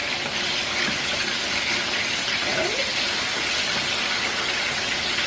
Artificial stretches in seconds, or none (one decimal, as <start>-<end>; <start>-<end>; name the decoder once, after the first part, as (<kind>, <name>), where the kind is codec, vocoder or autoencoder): none